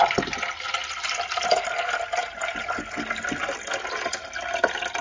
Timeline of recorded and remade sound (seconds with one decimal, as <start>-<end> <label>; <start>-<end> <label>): 0.0-5.0 recorded